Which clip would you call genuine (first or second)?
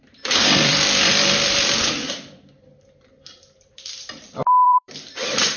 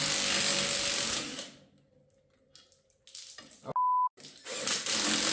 second